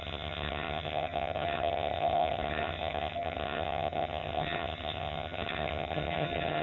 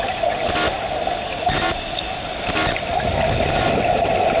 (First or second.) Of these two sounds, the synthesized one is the first